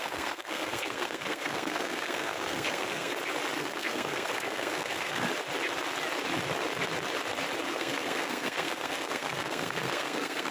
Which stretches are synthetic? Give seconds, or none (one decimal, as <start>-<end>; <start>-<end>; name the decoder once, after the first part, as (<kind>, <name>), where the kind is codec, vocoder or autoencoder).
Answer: 0.0-3.1 (codec, SNAC); 3.6-5.2; 7.7-10.5